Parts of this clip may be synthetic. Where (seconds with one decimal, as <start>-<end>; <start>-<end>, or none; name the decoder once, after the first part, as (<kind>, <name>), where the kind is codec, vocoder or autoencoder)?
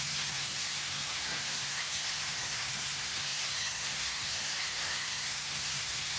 0.0-6.2 (codec, SNAC)